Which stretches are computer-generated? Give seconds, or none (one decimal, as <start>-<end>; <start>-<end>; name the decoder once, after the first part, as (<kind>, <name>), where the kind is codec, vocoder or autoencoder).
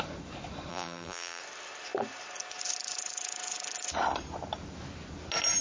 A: 0.7-1.4 (vocoder, BigVGAN v2)